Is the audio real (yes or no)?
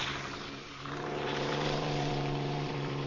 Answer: no